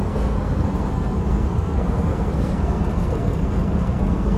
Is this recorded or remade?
remade